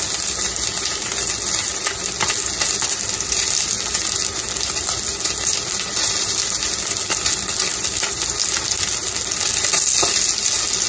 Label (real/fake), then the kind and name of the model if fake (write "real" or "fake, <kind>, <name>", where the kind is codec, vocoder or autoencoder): real